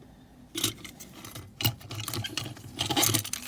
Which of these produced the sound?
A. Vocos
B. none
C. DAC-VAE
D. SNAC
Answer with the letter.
B